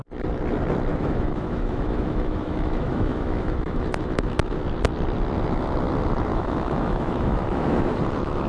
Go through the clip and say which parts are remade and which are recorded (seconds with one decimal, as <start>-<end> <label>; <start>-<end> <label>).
0.0-0.9 recorded; 0.9-4.6 remade; 4.6-6.3 recorded; 6.3-8.0 remade; 8.0-8.5 recorded